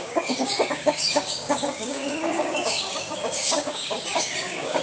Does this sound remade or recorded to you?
remade